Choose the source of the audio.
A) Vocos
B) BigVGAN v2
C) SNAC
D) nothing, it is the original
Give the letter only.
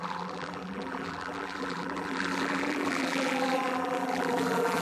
B